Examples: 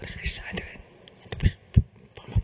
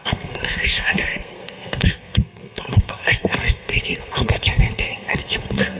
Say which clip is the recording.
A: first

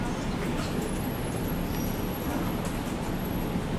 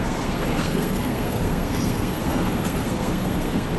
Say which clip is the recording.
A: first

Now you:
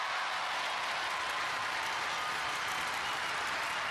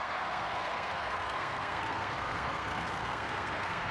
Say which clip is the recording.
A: first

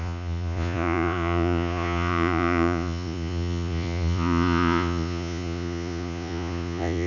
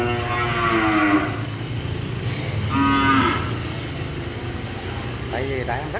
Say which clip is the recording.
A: second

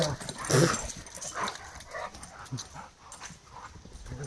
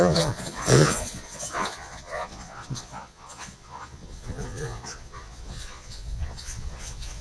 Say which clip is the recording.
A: first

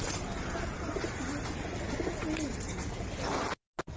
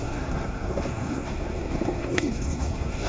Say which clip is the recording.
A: first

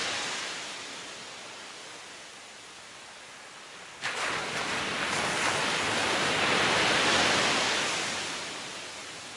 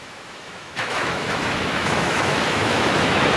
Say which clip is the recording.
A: first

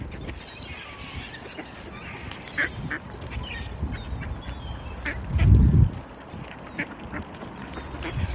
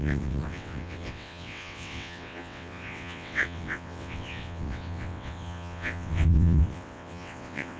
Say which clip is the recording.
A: first